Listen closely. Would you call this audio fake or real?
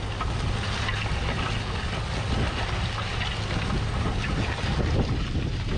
real